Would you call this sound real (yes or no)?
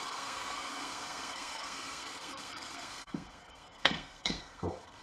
no